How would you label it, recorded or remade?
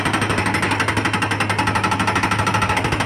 recorded